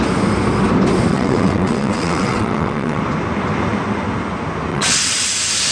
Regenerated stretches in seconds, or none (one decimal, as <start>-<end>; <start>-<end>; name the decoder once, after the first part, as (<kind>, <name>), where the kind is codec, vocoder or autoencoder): 1.1-3.0 (vocoder, WaveNeXt); 4.7-5.2